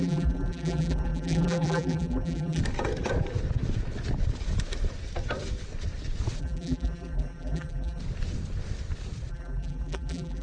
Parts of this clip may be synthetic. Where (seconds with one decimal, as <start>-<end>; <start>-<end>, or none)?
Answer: 0.0-2.6; 6.4-8.0; 9.3-10.4